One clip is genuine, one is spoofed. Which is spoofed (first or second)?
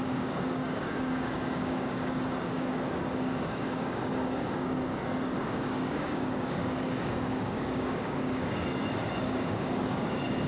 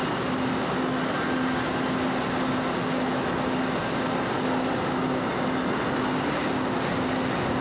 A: first